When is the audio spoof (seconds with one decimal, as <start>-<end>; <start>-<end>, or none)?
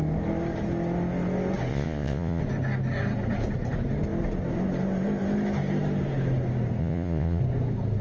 1.7-2.4; 6.8-7.4